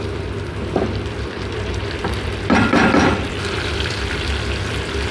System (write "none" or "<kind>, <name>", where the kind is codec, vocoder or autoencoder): vocoder, BigVGAN v2